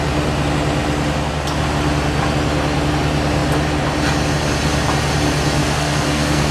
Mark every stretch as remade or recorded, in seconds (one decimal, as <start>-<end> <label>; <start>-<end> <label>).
0.0-5.6 recorded; 5.6-6.5 remade